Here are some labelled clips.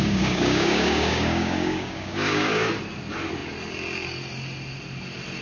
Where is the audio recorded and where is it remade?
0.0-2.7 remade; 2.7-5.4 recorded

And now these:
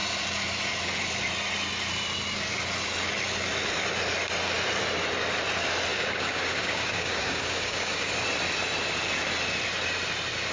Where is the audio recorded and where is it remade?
0.0-5.9 recorded; 5.9-8.1 remade; 8.1-10.5 recorded

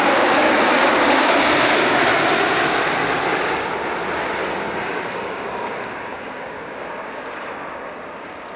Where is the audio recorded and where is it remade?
0.0-2.1 remade; 2.1-4.5 recorded; 4.5-8.6 remade

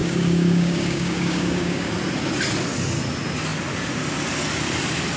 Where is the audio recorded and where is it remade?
0.0-1.9 remade; 1.9-5.2 recorded

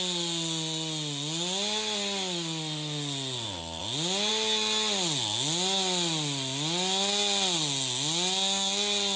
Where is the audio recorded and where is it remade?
0.0-9.2 recorded

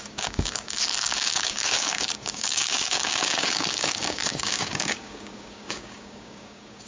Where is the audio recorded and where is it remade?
0.0-6.9 remade

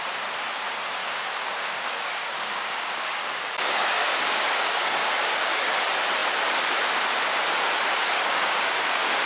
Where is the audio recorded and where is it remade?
0.0-1.0 recorded; 1.0-5.7 remade; 5.7-8.0 recorded; 8.0-9.3 remade

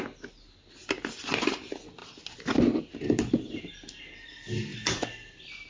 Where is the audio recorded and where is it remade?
0.0-5.7 recorded